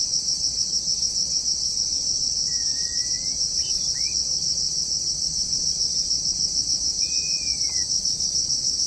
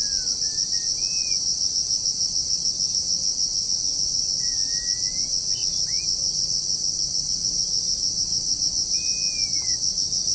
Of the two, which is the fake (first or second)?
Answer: first